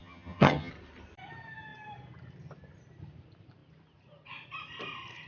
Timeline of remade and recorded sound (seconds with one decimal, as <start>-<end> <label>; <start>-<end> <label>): 0.0-0.7 remade; 0.7-5.3 recorded